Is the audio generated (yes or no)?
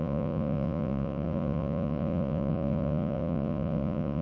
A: yes